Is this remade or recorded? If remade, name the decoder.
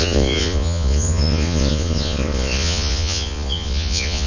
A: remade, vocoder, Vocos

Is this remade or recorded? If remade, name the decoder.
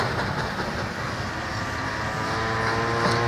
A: recorded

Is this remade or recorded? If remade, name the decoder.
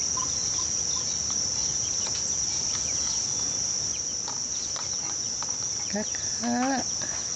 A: recorded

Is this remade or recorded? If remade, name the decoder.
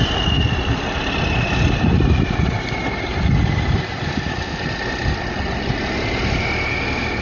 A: recorded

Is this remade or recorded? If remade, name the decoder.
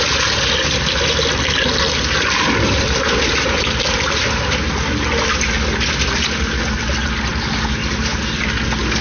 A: recorded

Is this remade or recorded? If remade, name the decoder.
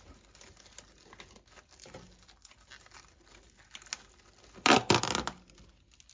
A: recorded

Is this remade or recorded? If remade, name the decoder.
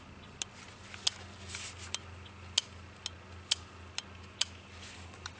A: recorded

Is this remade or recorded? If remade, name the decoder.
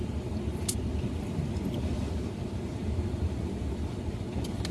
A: recorded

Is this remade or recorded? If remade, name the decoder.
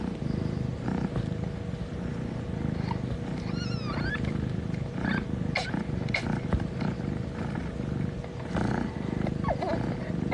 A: recorded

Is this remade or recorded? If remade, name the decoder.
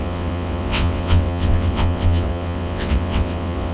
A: remade, vocoder, WaveNeXt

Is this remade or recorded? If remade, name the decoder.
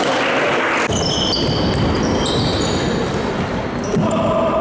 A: recorded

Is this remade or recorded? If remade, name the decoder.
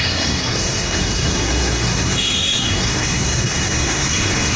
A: remade, codec, SNAC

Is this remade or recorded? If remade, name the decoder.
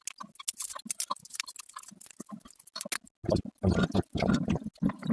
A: recorded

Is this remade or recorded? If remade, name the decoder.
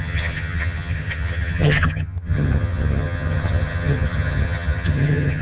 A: remade, vocoder, HiFi-GAN